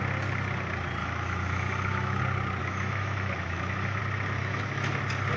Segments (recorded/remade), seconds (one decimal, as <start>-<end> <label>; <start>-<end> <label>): 0.0-1.0 recorded; 1.0-2.2 remade; 2.2-2.6 recorded; 2.6-4.0 remade; 4.0-4.4 recorded; 4.4-5.0 remade; 5.0-5.4 recorded